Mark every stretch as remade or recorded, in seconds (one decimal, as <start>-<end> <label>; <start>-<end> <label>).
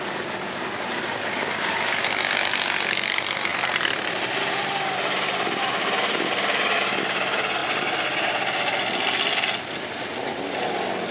0.0-11.1 recorded